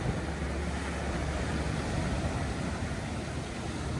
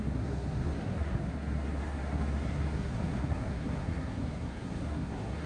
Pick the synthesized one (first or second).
second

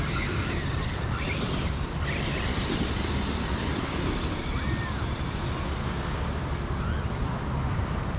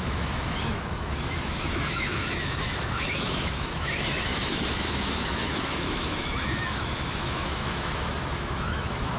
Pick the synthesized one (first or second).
second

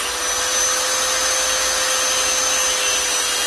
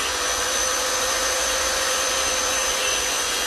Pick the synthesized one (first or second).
second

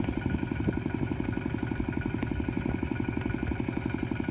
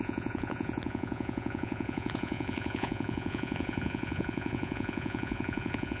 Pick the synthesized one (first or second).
second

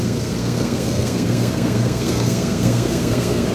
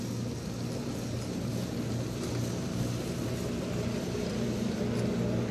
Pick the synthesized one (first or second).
first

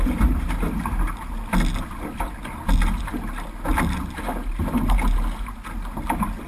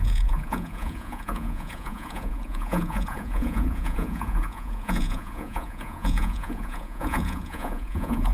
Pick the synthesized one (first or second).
second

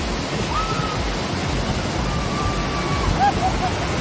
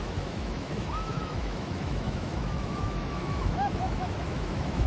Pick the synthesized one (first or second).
second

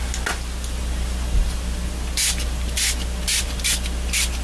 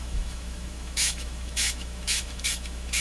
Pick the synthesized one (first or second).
second